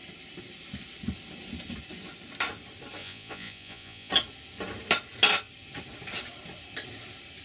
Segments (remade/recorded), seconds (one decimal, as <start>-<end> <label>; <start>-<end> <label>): 0.0-3.0 recorded; 3.0-4.1 remade; 4.1-7.4 recorded